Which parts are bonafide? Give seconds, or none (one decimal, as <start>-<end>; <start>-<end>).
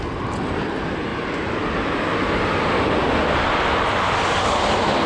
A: 0.0-5.1